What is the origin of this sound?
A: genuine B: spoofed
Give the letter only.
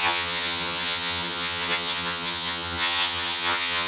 B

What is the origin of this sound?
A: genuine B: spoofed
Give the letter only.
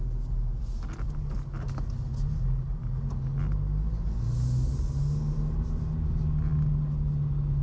A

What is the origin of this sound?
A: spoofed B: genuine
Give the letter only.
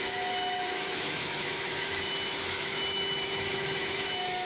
A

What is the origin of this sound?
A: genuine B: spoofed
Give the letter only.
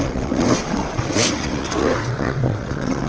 B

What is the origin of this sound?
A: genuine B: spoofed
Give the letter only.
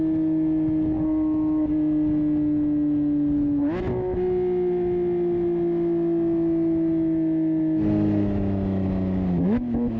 A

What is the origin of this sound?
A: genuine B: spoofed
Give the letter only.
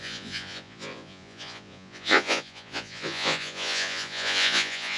B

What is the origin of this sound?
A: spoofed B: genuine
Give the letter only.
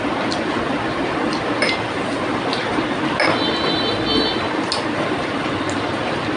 B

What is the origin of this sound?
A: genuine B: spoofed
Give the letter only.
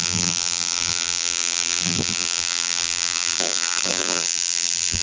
B